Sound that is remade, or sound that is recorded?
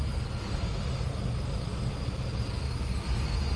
recorded